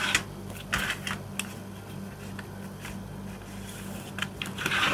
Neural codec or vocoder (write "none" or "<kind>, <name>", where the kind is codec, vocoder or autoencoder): none